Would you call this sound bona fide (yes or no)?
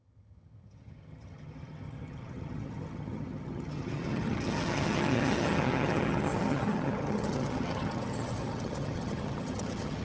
no